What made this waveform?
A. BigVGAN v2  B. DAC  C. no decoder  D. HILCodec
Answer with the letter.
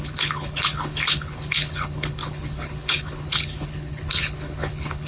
D